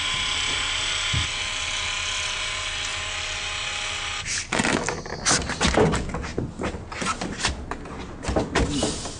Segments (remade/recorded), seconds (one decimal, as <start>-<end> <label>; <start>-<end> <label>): 0.0-9.2 recorded